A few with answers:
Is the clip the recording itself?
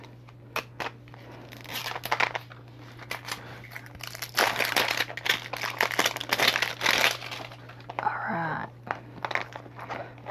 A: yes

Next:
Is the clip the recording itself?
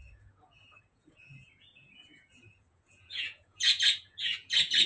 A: no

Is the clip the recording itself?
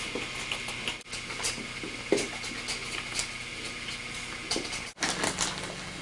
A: yes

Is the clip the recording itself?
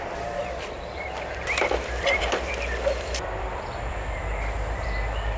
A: no